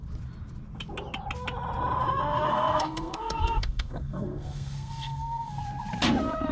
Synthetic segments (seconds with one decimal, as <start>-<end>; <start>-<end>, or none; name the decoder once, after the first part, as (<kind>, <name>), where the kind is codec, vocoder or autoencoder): 2.5-5.6 (codec, SNAC)